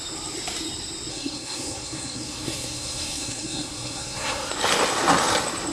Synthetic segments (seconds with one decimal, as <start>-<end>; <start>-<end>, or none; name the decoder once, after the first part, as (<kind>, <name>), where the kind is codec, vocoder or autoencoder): 1.1-4.5 (codec, SNAC)